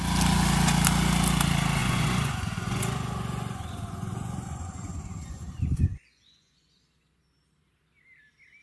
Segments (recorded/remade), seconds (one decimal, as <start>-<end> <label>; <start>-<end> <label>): 0.0-1.8 recorded; 1.8-6.7 remade; 6.7-8.6 recorded